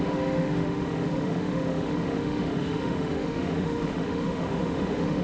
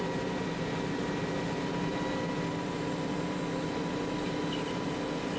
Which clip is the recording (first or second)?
second